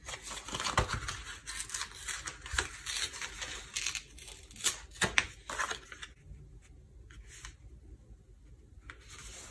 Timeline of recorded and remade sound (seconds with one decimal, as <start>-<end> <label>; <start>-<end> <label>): 0.0-9.5 recorded